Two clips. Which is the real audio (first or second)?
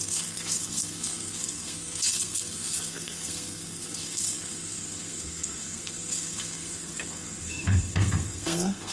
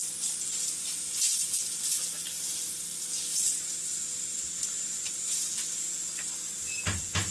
second